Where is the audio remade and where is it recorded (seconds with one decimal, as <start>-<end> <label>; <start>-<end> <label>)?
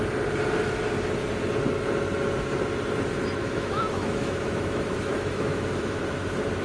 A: 0.0-3.4 recorded; 3.4-6.0 remade; 6.0-6.6 recorded